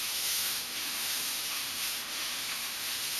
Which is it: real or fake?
fake